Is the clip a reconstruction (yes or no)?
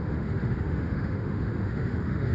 yes